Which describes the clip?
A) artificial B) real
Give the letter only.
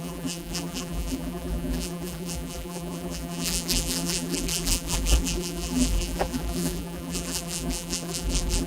A